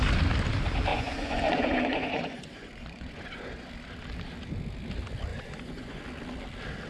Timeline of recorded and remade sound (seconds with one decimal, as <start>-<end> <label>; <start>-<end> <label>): 0.0-0.9 recorded; 0.9-3.7 remade; 3.7-5.3 recorded; 5.3-6.0 remade; 6.0-6.9 recorded